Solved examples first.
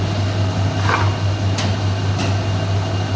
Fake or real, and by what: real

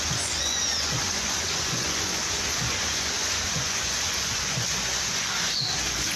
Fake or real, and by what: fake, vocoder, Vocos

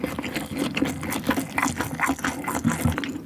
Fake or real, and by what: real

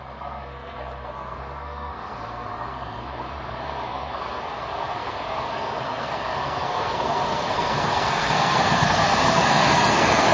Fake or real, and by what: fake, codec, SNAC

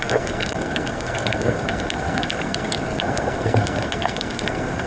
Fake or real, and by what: fake, codec, SNAC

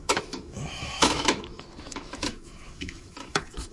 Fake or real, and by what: fake, autoencoder, DAC-VAE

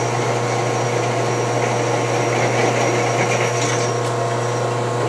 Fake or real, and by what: real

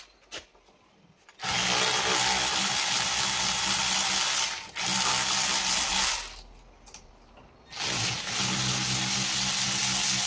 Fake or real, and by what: real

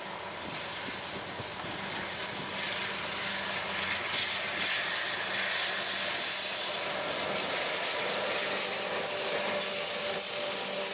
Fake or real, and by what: real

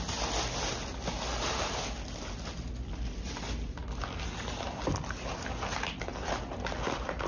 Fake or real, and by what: real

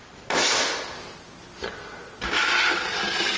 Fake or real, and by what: real